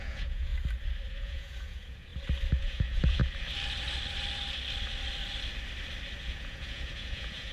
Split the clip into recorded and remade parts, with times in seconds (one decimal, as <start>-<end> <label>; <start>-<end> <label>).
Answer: 0.0-0.5 remade; 0.5-1.1 recorded; 1.1-2.1 remade; 2.1-2.6 recorded; 2.6-3.2 remade; 3.2-6.2 recorded; 6.2-7.5 remade